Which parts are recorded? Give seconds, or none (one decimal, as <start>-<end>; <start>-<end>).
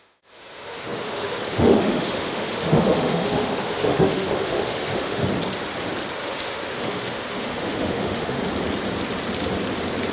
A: 5.2-6.1; 8.4-10.1